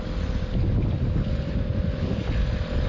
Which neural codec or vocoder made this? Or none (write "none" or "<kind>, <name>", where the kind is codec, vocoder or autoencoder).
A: none